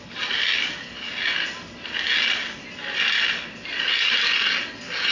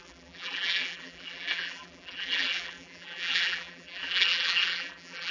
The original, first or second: first